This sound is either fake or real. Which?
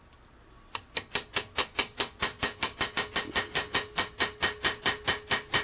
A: real